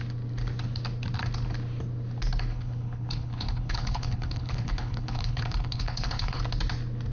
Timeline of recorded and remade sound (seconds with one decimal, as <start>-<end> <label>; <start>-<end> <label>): 0.0-2.5 recorded; 2.5-6.4 remade; 6.4-7.1 recorded